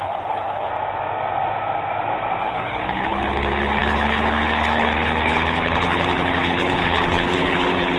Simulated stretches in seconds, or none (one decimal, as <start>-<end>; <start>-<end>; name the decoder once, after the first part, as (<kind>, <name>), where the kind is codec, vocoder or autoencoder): 0.0-0.7 (codec, HILCodec); 2.4-8.0